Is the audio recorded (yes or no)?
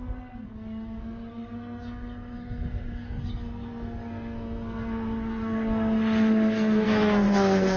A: no